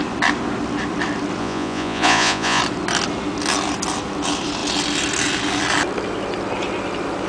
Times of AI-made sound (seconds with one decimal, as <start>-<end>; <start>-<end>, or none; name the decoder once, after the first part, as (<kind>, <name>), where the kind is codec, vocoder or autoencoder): 1.4-2.6 (vocoder, Vocos)